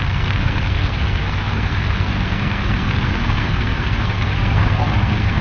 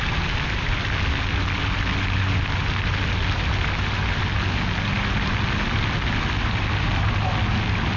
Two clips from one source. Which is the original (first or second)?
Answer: second